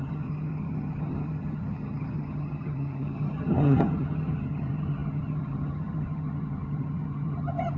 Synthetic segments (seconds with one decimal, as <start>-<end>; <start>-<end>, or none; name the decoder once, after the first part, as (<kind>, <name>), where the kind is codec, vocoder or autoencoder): 0.0-7.8 (vocoder, HiFi-GAN)